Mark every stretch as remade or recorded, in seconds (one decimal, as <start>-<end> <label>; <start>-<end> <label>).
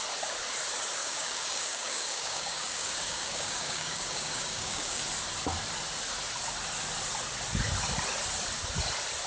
0.0-1.0 recorded; 1.0-5.0 remade; 5.0-9.3 recorded